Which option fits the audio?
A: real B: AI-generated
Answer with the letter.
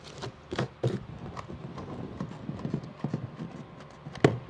A